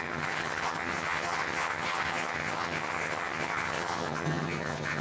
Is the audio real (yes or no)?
no